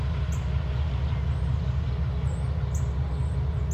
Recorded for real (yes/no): yes